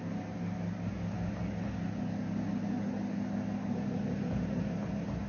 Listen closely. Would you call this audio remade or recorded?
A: recorded